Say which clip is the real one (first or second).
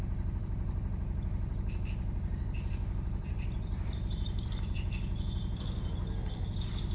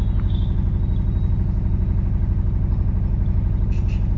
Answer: second